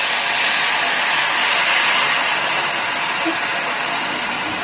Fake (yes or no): no